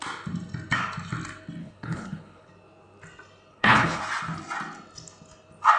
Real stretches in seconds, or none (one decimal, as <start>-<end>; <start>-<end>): 0.0-1.6; 2.5-3.5; 4.0-5.8